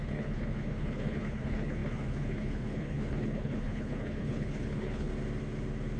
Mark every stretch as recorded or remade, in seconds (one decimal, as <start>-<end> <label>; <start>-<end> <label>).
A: 0.0-5.1 remade; 5.1-6.0 recorded